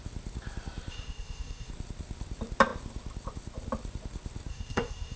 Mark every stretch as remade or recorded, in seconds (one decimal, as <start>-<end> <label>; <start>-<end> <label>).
0.0-0.9 recorded; 0.9-1.7 remade; 1.7-4.5 recorded; 4.5-5.2 remade